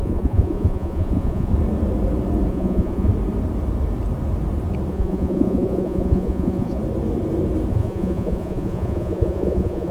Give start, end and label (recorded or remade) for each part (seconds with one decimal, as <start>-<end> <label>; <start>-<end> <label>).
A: 0.0-1.5 remade; 1.5-2.5 recorded; 2.5-3.1 remade; 3.1-4.9 recorded; 4.9-6.8 remade; 6.8-7.7 recorded; 7.7-9.9 remade